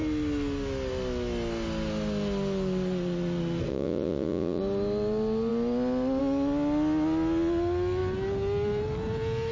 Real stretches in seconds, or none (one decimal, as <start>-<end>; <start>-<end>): 0.0-3.7; 4.6-9.5